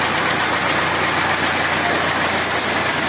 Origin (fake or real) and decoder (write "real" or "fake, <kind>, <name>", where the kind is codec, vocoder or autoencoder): real